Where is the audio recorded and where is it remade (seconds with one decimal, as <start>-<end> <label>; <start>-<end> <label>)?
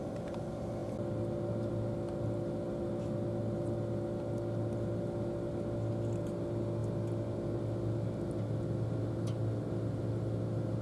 0.0-10.8 recorded